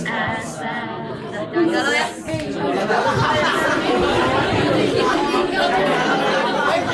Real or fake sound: real